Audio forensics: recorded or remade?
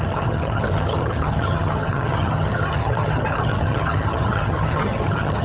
remade